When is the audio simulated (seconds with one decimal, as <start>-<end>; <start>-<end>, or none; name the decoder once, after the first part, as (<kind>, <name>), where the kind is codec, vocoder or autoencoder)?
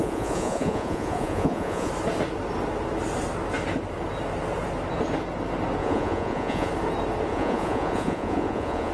0.0-1.9 (vocoder, Vocos); 5.8-6.7; 7.3-8.9